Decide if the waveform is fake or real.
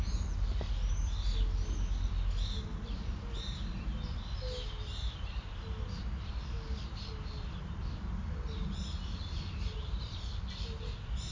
real